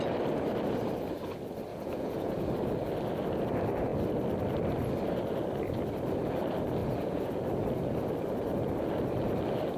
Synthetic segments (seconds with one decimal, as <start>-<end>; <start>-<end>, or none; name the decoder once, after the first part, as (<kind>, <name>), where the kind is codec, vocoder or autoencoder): 1.7-2.5 (vocoder, Vocos); 6.8-7.4